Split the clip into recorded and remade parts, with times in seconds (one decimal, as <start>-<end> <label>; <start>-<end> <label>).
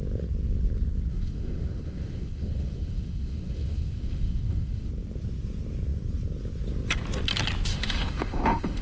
0.0-1.1 recorded; 1.1-4.9 remade; 4.9-7.7 recorded; 7.7-8.8 remade